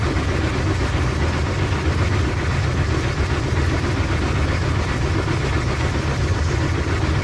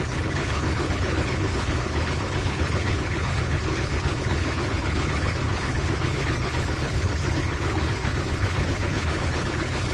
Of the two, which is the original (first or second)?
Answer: first